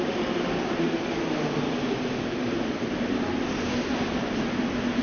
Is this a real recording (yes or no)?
yes